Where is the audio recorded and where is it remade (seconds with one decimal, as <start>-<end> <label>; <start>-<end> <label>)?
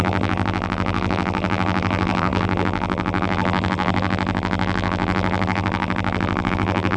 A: 0.0-7.0 remade